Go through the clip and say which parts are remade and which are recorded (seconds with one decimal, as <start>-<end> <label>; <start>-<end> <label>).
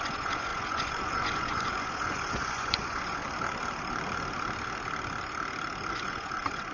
0.0-3.2 remade; 3.2-5.9 recorded; 5.9-6.7 remade